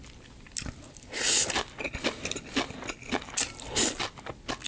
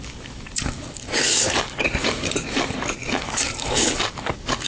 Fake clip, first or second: second